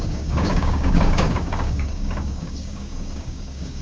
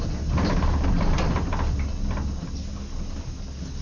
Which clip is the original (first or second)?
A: second